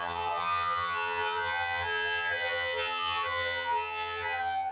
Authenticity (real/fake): fake